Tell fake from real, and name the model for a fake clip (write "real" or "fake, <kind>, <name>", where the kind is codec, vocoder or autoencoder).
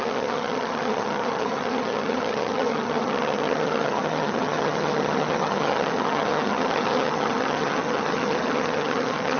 fake, vocoder, HiFi-GAN